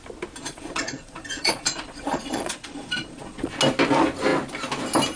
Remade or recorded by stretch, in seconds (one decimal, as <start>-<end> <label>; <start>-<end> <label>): 0.0-0.4 recorded; 0.4-3.5 remade; 3.5-5.2 recorded